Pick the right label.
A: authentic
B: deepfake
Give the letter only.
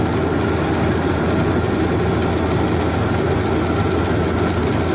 A